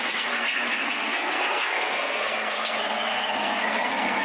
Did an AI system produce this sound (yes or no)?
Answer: yes